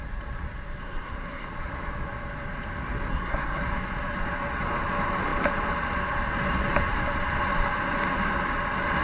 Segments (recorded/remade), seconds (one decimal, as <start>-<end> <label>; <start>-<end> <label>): 0.0-0.8 recorded; 0.8-1.5 remade; 1.5-3.1 recorded; 3.1-3.6 remade; 3.6-9.0 recorded